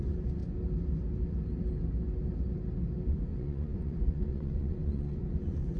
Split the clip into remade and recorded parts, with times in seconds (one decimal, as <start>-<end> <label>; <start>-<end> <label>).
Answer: 0.0-0.4 remade; 0.4-3.1 recorded; 3.1-5.8 remade